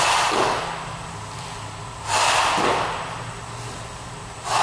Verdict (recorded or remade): recorded